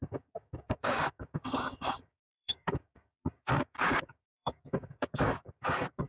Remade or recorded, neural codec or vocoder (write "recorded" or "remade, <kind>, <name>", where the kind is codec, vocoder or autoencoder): remade, codec, DAC